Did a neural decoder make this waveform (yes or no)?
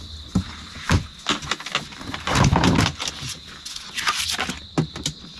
no